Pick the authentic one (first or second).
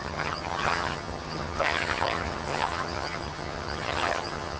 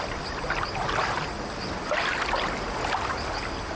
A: second